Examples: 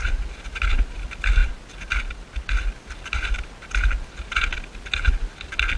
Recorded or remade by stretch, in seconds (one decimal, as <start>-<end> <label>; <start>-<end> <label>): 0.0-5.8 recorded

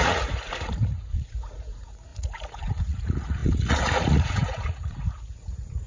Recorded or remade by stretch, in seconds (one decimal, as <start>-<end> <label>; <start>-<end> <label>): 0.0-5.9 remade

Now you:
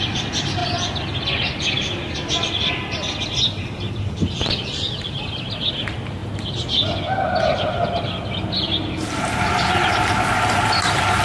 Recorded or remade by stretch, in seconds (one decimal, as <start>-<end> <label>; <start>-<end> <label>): 0.0-11.2 recorded

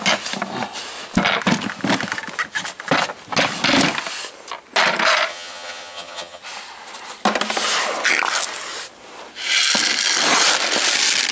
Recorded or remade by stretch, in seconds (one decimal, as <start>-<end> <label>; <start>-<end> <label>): 0.0-5.3 recorded; 5.3-6.4 remade; 6.4-11.3 recorded

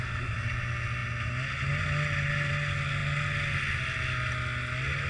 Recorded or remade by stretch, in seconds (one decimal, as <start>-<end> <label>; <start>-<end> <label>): 0.0-5.1 recorded

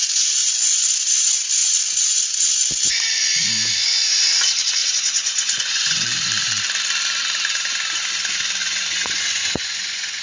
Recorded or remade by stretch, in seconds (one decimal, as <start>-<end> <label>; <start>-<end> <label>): 0.0-4.8 recorded; 4.8-6.6 remade; 6.6-8.6 recorded; 8.6-10.2 remade